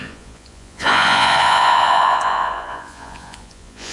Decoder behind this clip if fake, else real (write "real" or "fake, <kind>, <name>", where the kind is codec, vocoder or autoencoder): fake, vocoder, Vocos